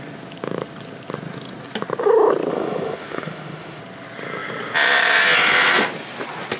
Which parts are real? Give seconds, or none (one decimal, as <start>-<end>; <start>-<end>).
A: 0.0-2.5; 3.8-6.6